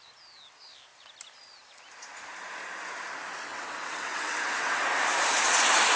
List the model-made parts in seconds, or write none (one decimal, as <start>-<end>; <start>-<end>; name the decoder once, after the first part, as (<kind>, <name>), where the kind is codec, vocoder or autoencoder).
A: 3.5-4.8 (vocoder, WaveNeXt)